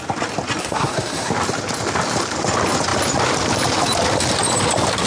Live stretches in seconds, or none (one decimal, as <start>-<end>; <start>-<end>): 0.0-0.6; 1.3-5.1